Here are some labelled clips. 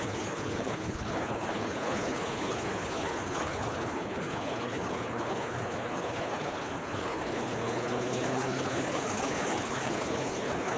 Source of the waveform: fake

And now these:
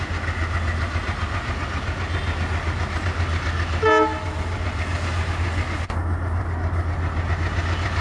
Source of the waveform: real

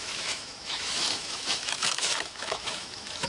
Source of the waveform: fake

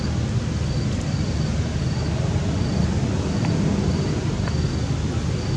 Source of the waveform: real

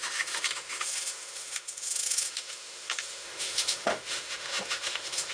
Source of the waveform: fake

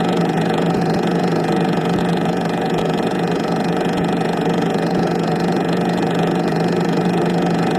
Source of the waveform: fake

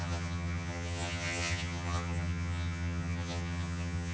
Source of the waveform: fake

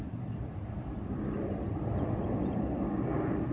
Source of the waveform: real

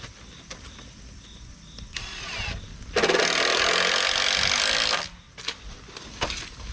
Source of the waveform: real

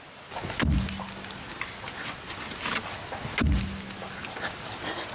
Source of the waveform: real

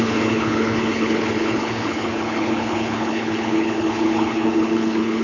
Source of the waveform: fake